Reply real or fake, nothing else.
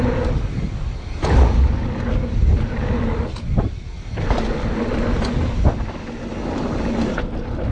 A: real